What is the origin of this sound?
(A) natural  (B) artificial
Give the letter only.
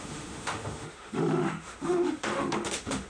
B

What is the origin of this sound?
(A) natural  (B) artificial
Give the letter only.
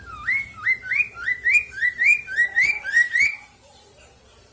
B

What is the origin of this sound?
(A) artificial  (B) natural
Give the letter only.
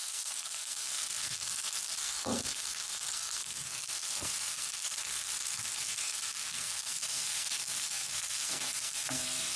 A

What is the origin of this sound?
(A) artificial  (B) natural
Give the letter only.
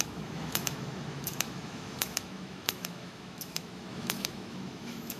A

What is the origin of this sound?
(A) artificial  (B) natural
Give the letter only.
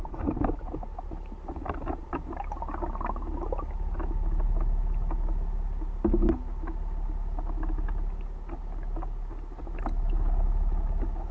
B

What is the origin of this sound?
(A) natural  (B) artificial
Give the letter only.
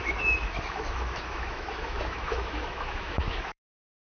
B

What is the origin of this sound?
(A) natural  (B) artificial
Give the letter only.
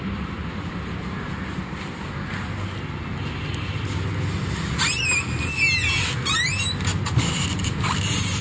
A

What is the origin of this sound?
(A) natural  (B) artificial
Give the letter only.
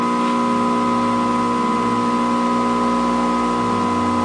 A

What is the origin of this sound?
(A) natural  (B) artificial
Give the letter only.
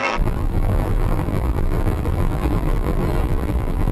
B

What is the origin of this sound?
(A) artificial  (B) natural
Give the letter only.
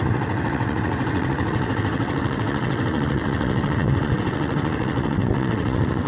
A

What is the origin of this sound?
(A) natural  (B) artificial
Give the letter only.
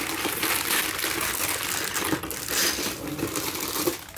A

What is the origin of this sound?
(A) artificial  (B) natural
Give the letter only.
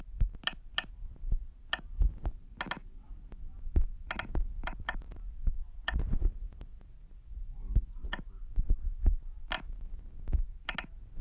B